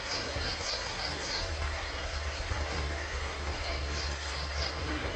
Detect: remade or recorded remade